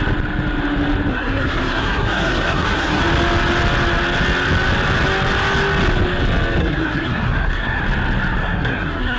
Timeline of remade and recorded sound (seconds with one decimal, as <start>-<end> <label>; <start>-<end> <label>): 0.0-1.1 recorded; 1.1-3.0 remade; 3.0-6.6 recorded; 6.6-7.8 remade; 7.8-8.4 recorded; 8.4-9.2 remade